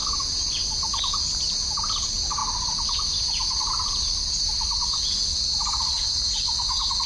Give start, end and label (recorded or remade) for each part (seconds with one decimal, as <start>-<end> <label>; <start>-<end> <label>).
0.0-2.4 recorded; 2.4-7.1 remade